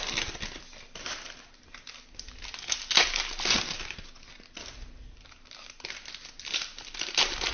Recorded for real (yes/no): yes